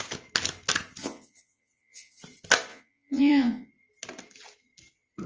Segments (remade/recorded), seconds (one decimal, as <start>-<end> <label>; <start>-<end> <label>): 0.0-1.0 recorded; 1.0-2.2 remade; 2.2-2.7 recorded; 2.7-3.7 remade; 3.7-5.3 recorded

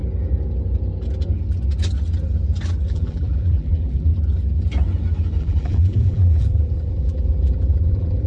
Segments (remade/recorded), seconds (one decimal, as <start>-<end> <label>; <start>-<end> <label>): 0.0-2.9 recorded; 2.9-4.1 remade; 4.1-5.4 recorded; 5.4-8.3 remade

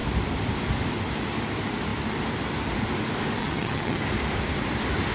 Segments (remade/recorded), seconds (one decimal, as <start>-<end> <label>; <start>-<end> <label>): 0.0-3.4 recorded; 3.4-4.0 remade; 4.0-5.1 recorded